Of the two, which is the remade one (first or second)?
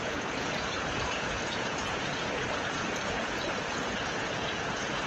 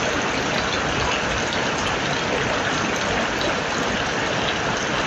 first